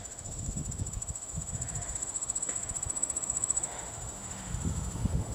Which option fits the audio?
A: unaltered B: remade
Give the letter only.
B